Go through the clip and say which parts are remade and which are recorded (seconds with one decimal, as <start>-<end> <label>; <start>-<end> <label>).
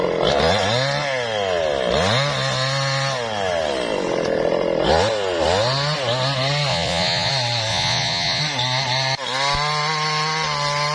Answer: 0.0-6.7 recorded; 6.7-7.3 remade; 7.3-7.7 recorded; 7.7-8.4 remade; 8.4-10.9 recorded